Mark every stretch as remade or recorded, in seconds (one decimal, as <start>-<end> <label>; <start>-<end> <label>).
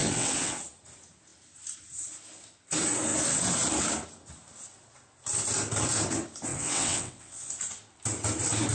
0.0-0.6 remade; 0.6-6.5 recorded; 6.5-7.5 remade; 7.5-8.7 recorded